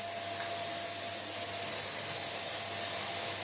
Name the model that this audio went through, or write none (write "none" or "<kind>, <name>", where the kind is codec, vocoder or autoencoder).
none